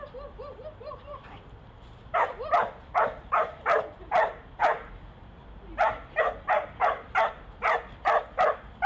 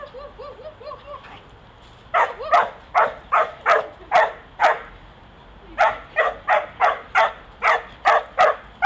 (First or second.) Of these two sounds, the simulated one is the first